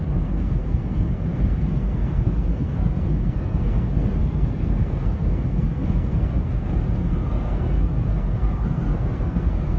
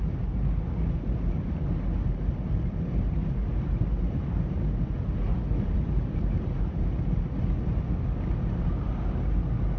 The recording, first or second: second